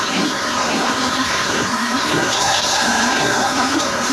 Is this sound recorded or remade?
remade